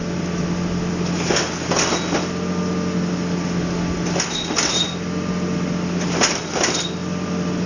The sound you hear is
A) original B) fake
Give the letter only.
A